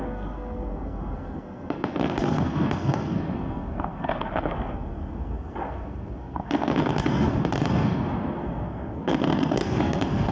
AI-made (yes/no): yes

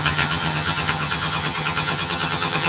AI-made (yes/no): yes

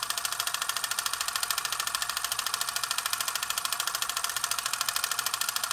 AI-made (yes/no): no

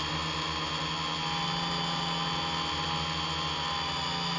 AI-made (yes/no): no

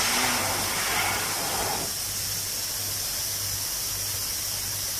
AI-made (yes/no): no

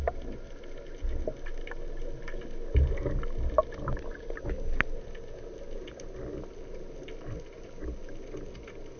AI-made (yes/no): no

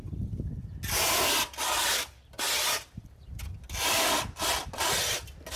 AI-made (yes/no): yes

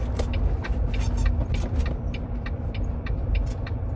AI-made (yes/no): yes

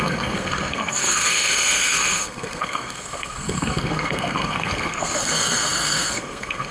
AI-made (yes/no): yes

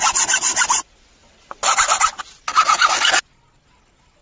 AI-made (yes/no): no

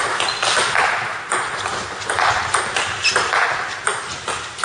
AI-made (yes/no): no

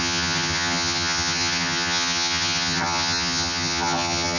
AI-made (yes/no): yes